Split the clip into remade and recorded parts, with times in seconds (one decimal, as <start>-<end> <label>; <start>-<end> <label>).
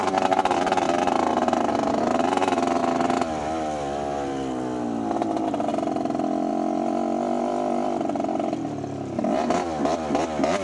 0.0-10.6 recorded